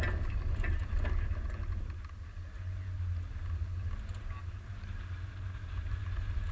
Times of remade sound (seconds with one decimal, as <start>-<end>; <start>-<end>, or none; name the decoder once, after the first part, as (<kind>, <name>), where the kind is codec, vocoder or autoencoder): none